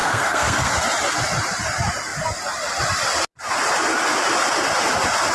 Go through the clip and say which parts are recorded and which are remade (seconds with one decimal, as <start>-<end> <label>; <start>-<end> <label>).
0.0-0.7 remade; 0.7-5.3 recorded